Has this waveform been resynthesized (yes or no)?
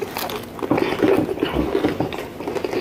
no